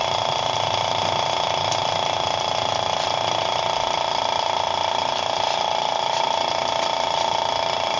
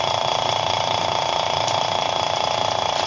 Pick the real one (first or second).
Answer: first